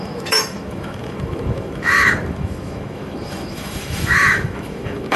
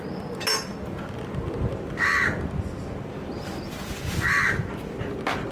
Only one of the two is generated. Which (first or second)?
first